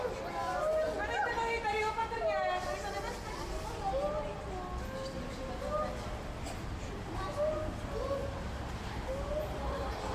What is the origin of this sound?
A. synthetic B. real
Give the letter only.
B